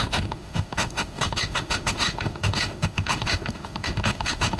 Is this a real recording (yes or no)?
no